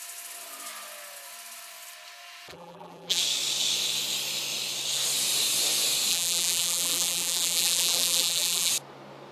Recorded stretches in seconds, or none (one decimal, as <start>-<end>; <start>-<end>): 0.0-2.5; 3.2-6.1; 8.7-9.3

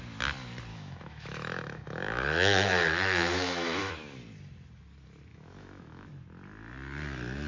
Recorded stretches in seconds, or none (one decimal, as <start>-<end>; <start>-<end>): 0.0-0.7; 3.9-5.3; 6.1-7.5

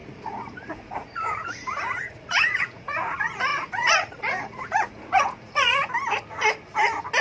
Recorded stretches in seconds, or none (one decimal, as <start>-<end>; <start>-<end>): 5.8-7.2